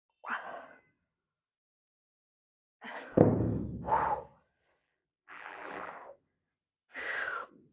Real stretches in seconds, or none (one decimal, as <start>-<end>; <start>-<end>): 0.0-4.8; 5.9-7.7